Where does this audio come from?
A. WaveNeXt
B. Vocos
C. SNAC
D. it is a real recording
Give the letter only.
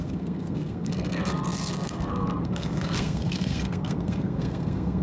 C